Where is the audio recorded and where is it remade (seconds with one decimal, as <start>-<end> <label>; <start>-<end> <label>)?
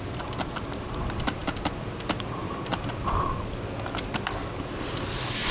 0.0-5.5 recorded